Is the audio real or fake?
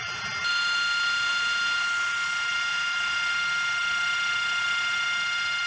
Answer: real